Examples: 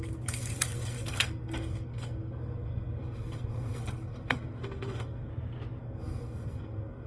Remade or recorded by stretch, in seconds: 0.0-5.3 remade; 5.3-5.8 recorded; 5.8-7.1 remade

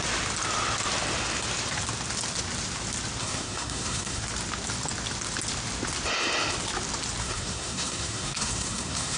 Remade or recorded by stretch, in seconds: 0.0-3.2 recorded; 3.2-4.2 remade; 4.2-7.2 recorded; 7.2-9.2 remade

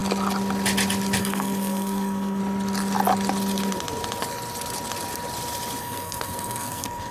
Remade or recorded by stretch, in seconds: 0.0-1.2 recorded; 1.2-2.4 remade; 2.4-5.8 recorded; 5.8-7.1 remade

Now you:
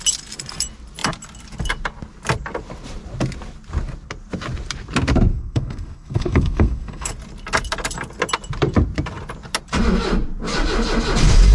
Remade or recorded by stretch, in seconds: 0.0-5.3 recorded; 5.3-7.1 remade; 7.1-11.5 recorded

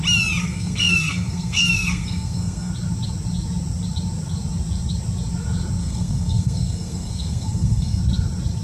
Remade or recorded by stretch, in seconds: 0.0-0.4 recorded; 0.4-2.7 remade; 2.7-5.8 recorded; 5.8-8.0 remade; 8.0-8.6 recorded